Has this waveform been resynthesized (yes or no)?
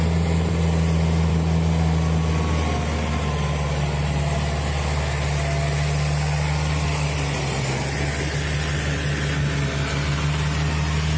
no